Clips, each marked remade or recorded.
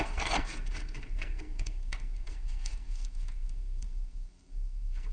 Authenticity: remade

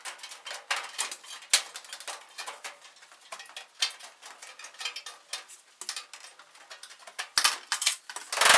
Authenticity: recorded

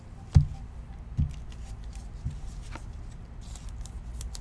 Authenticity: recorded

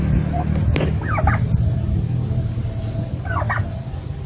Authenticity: recorded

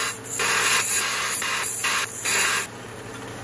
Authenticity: recorded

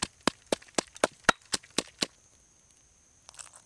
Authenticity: recorded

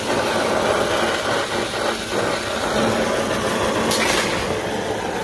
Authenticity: recorded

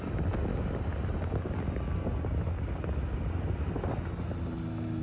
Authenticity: recorded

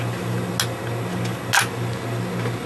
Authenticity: recorded